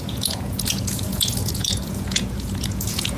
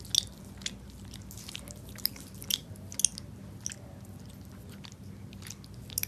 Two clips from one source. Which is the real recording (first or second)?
second